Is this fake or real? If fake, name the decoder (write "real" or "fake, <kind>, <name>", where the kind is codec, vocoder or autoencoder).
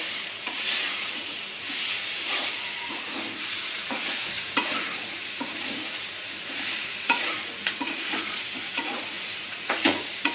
fake, vocoder, Vocos